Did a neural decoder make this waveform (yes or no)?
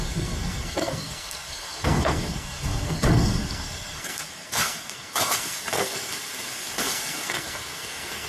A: yes